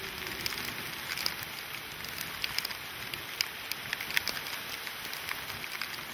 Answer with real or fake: real